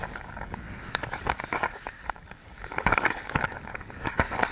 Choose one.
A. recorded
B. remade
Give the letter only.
B